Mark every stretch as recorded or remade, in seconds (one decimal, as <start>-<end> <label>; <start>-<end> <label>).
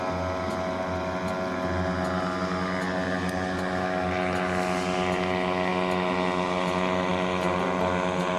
0.0-8.4 recorded